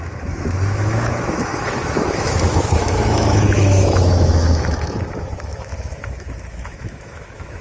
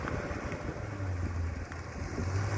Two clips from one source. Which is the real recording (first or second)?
second